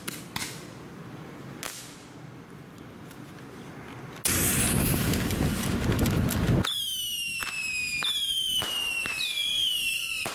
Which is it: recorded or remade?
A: recorded